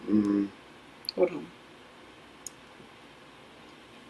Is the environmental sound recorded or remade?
recorded